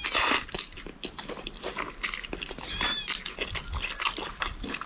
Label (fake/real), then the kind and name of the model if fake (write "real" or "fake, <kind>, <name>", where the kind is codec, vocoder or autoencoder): real